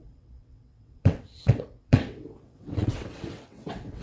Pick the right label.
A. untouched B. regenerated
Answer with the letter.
B